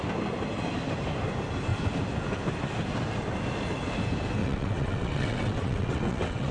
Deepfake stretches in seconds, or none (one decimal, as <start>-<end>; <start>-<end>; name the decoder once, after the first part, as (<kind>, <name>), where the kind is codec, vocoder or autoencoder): 4.4-6.5 (vocoder, WaveNeXt)